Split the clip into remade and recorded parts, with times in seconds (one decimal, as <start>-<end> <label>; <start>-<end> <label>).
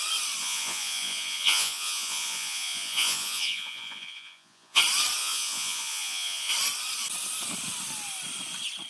0.0-0.4 recorded; 0.4-4.8 remade; 4.8-5.2 recorded; 5.2-6.5 remade; 6.5-8.9 recorded